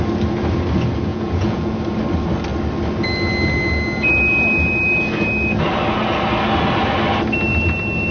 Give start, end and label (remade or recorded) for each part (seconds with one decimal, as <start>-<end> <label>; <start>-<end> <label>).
0.0-1.1 recorded; 1.1-1.8 remade; 1.8-8.1 recorded